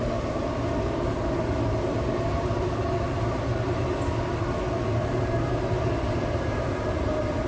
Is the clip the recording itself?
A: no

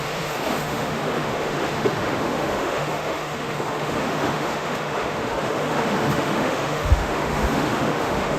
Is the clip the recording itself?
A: no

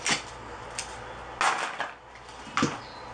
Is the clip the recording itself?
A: yes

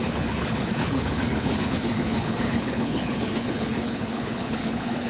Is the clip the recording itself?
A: no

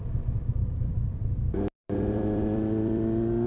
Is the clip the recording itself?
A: no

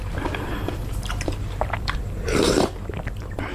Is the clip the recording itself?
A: no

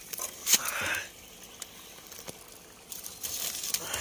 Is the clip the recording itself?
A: yes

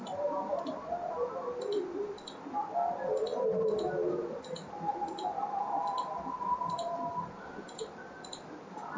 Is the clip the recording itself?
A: yes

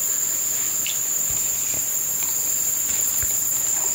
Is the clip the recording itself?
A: yes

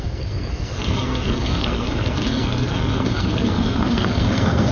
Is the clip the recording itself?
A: no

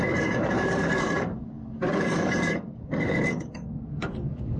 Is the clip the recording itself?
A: no